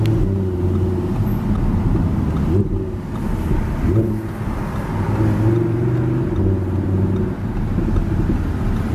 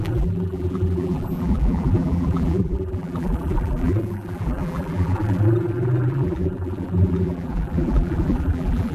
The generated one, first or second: second